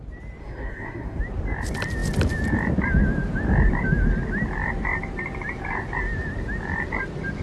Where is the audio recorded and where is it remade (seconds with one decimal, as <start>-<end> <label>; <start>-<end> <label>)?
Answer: 0.0-0.4 recorded; 0.4-1.2 remade; 1.2-7.4 recorded